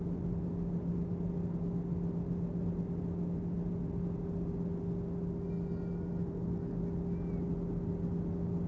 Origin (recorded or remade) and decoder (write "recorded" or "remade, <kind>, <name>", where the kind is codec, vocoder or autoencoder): recorded